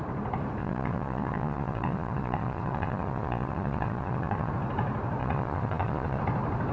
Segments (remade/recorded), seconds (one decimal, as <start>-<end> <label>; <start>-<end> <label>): 0.0-0.6 recorded; 0.6-4.5 remade; 4.5-5.2 recorded; 5.2-6.2 remade; 6.2-6.7 recorded